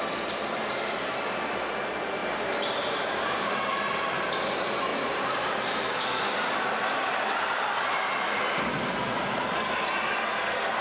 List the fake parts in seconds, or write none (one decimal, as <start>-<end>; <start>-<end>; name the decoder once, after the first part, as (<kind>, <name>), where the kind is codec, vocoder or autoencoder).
2.2-4.3 (vocoder, BigVGAN v2); 4.9-6.2